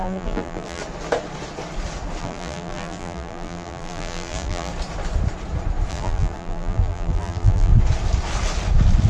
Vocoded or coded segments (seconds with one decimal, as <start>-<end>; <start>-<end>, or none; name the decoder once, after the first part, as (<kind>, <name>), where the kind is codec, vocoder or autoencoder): 0.0-0.8 (vocoder, BigVGAN v2); 2.2-4.7; 5.9-7.7